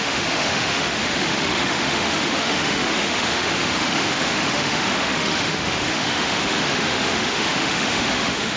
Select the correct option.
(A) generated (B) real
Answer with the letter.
A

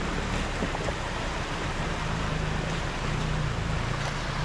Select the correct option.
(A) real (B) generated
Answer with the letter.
A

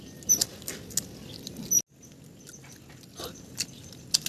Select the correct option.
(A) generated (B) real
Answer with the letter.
B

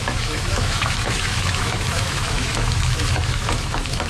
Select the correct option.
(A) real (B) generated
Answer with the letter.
B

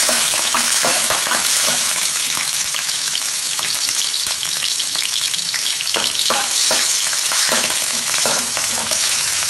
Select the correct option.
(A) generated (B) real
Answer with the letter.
A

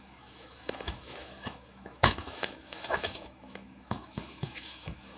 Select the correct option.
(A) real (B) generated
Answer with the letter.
B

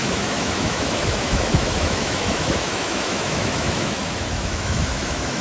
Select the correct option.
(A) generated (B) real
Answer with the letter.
A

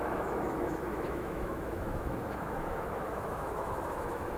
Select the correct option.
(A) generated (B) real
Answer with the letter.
A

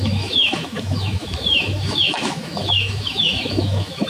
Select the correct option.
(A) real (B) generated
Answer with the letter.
B